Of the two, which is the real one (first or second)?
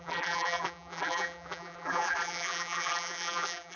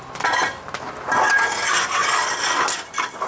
second